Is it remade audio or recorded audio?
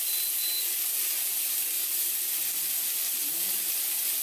recorded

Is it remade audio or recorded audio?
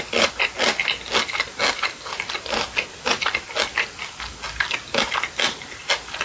recorded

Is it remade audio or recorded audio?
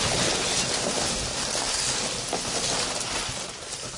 recorded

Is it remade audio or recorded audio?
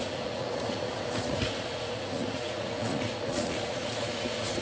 remade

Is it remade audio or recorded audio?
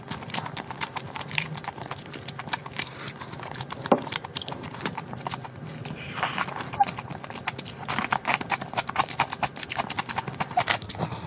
remade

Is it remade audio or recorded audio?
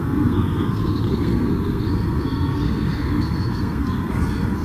remade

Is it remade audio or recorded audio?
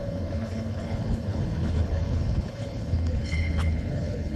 remade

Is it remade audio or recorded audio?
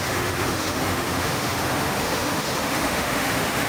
remade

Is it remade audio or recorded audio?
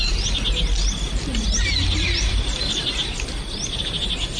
recorded